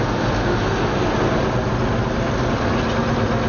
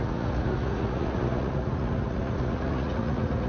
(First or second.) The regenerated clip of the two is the second